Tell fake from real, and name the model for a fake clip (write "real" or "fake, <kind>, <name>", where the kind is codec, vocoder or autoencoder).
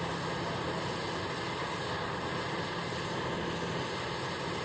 real